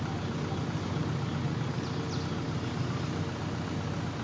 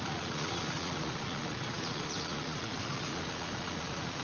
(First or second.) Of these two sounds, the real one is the first